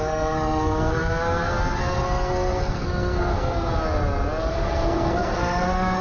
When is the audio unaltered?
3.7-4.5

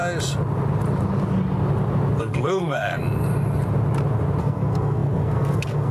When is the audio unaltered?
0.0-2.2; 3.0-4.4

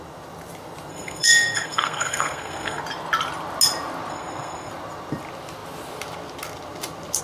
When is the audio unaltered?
0.0-0.9; 2.8-4.1; 4.7-7.2

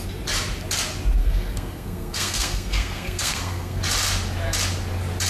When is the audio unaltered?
0.0-1.2; 3.8-5.3

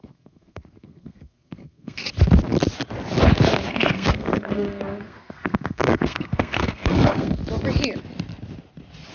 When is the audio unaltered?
2.0-3.7; 7.4-9.1

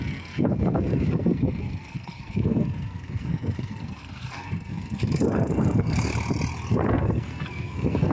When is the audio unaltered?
6.1-6.7

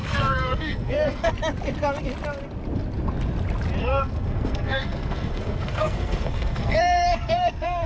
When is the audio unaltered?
1.3-3.8

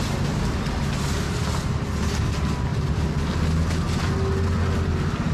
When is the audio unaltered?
0.0-5.3